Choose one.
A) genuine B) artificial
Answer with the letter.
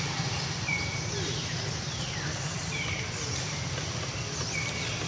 A